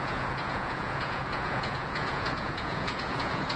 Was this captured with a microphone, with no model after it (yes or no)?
no